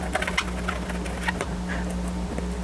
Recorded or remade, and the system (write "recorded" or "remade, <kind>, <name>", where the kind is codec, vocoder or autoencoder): recorded